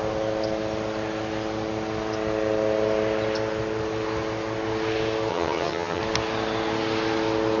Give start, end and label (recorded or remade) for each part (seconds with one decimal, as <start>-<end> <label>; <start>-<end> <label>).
0.0-5.3 recorded; 5.3-6.0 remade; 6.0-7.6 recorded